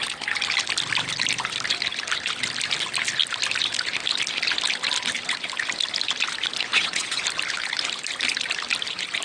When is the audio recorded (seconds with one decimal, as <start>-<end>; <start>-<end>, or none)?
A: 0.0-6.7; 7.2-9.2